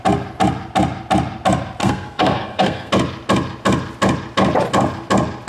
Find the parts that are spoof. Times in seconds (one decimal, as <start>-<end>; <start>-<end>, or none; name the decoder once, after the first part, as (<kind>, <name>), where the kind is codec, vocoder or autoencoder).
1.8-2.9 (codec, SNAC)